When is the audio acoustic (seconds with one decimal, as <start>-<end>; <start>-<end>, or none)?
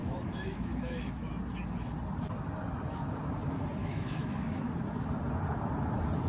1.3-3.8; 4.7-6.3